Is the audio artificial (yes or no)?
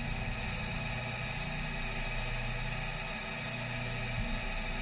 no